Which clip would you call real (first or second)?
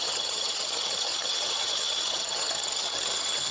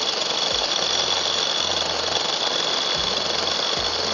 second